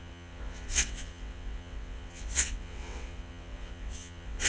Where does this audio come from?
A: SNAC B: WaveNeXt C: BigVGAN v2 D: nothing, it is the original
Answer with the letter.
B